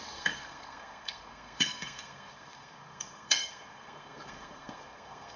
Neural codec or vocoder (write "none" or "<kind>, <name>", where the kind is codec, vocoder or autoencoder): codec, SNAC